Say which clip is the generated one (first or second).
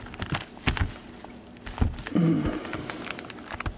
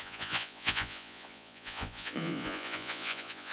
second